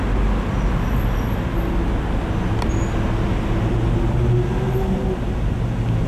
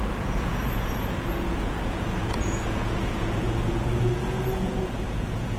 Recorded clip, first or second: first